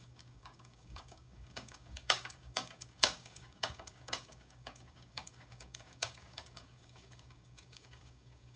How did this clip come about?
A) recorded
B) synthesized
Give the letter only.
B